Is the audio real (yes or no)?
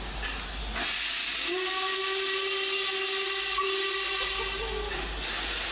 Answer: yes